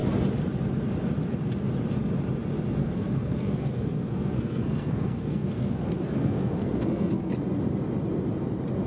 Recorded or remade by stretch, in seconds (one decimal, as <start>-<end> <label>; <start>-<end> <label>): 0.0-2.8 recorded; 2.8-7.3 remade; 7.3-8.9 recorded